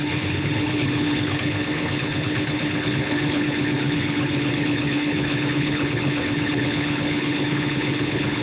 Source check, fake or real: fake